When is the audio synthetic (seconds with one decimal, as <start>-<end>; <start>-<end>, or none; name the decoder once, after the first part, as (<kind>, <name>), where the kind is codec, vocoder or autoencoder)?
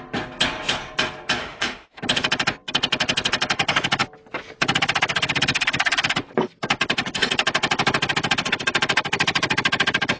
1.4-2.0 (autoencoder, DAC-VAE)